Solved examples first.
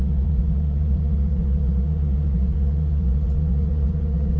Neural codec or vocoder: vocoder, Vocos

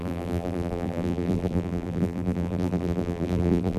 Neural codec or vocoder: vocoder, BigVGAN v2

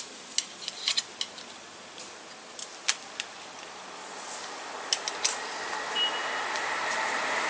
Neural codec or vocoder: none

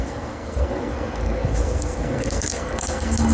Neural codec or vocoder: codec, SNAC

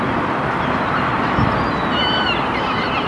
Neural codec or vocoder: vocoder, BigVGAN v2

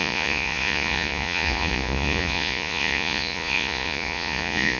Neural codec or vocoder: vocoder, Vocos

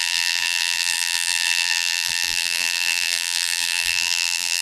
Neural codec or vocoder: vocoder, BigVGAN v2